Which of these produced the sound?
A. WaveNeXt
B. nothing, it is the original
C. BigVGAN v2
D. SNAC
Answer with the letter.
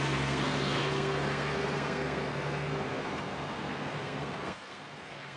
D